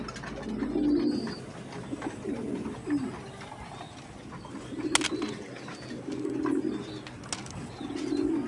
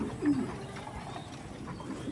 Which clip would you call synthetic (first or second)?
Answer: second